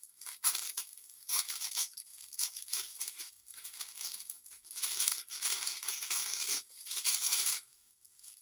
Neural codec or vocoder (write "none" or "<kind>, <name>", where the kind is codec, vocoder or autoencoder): codec, DAC